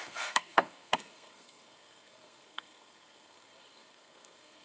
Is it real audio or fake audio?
fake